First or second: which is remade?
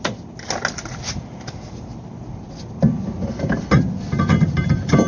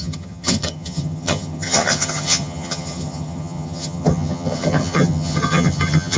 second